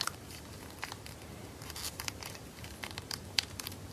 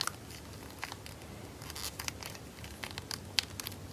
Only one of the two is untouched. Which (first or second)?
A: second